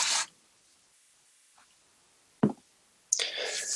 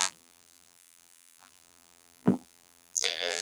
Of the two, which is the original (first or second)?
first